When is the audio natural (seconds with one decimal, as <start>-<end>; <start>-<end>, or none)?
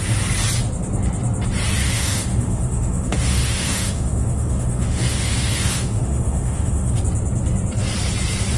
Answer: 0.0-1.8; 7.0-8.6